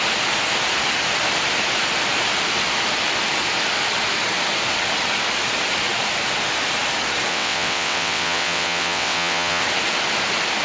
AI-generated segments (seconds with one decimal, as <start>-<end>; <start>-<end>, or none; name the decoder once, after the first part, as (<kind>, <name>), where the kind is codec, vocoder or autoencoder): 7.3-9.6 (vocoder, WaveNeXt)

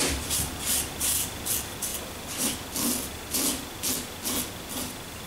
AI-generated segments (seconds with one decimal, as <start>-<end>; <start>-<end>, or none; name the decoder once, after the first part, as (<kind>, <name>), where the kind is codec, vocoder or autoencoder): none

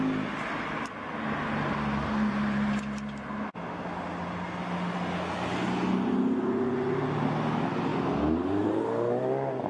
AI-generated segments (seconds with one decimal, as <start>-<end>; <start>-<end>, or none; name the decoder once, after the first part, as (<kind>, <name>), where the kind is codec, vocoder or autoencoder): none

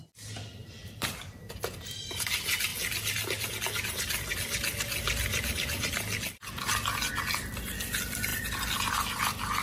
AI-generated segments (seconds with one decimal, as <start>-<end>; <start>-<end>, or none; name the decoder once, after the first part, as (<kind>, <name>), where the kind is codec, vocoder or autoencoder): 0.6-1.6 (vocoder, BigVGAN v2)

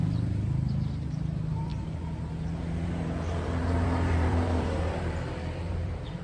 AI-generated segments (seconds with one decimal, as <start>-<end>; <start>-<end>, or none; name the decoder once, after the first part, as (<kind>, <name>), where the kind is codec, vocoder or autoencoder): 0.0-6.2 (vocoder, BigVGAN v2)

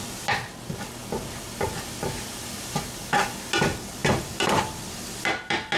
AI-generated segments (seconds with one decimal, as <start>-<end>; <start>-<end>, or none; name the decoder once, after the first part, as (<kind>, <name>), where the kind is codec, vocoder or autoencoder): 1.0-2.8 (vocoder, BigVGAN v2); 4.0-5.8

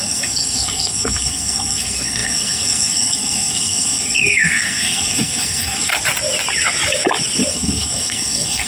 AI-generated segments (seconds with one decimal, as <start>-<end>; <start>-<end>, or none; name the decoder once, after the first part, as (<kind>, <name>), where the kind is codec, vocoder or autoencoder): 0.0-5.9 (codec, SNAC); 7.5-8.7

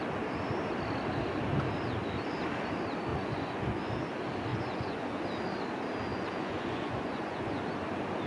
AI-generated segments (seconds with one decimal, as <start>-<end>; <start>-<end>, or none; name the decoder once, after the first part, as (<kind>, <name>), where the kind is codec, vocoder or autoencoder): 3.1-3.8 (vocoder, Vocos); 4.5-5.2; 6.1-7.6